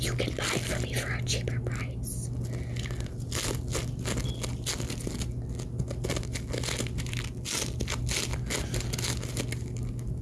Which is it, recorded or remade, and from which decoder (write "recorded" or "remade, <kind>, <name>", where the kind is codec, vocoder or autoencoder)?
recorded